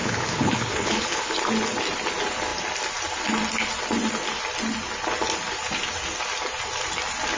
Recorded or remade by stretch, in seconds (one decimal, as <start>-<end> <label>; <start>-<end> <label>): 0.0-1.3 remade; 1.3-7.4 recorded